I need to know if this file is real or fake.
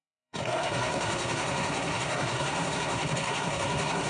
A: fake